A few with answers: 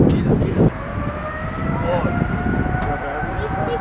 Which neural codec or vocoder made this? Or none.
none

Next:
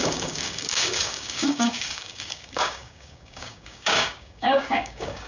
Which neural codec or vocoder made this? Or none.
codec, DAC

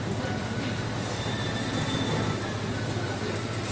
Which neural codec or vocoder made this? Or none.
none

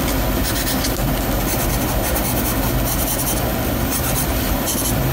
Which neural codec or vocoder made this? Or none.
none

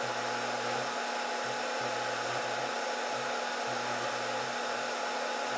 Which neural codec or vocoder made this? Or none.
none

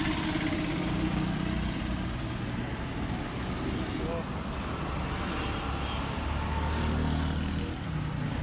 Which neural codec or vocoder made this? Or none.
none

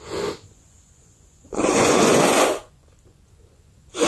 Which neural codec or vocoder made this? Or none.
vocoder, Vocos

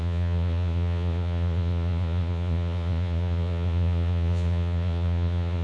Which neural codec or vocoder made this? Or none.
vocoder, Vocos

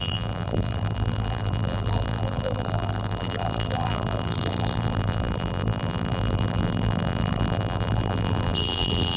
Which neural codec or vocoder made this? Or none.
vocoder, BigVGAN v2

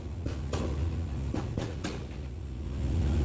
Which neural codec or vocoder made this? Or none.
vocoder, Vocos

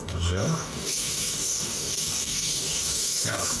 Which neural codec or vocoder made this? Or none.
codec, DAC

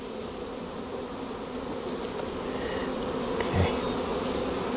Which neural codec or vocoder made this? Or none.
none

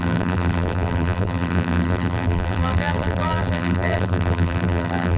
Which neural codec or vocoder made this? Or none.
vocoder, BigVGAN v2